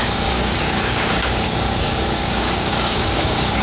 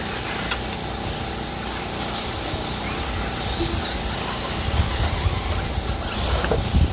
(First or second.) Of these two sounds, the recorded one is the second